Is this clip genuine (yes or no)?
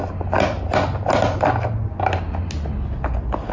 yes